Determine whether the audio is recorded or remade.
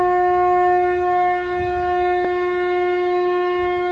remade